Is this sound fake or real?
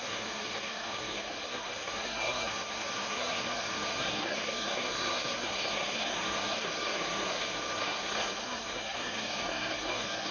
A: fake